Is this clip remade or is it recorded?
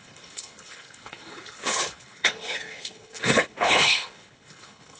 remade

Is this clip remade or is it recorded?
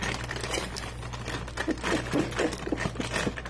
recorded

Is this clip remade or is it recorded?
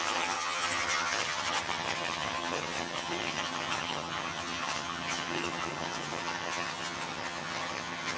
remade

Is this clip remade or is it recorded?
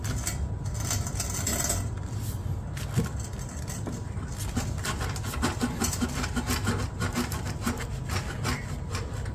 recorded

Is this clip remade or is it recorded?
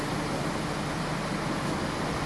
recorded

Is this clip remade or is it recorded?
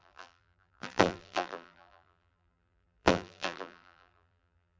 remade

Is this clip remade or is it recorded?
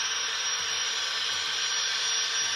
recorded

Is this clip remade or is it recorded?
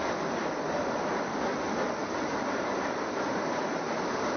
recorded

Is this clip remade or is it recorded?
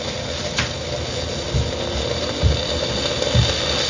recorded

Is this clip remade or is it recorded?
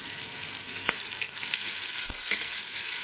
remade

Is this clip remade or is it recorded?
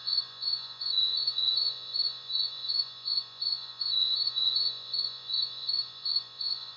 remade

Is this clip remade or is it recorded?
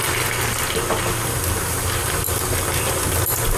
recorded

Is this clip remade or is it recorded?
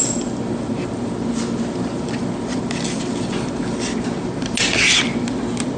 recorded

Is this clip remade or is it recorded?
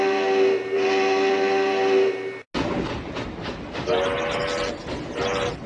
recorded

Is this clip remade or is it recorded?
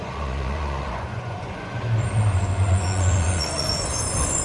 remade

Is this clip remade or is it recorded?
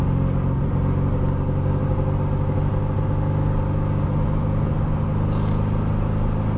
recorded